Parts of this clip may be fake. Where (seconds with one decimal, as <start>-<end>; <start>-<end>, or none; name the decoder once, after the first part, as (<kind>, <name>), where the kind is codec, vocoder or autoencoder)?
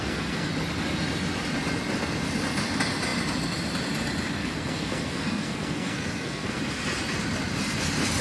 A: 0.0-0.5 (codec, SNAC); 4.4-6.6